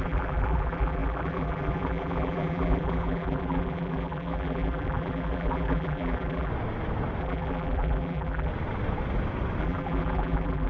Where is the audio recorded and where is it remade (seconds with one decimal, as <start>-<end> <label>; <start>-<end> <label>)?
0.0-6.5 remade; 6.5-7.2 recorded; 7.2-8.5 remade; 8.5-9.6 recorded; 9.6-10.7 remade